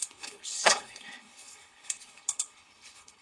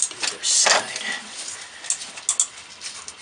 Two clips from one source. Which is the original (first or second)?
second